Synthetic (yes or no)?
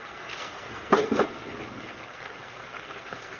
yes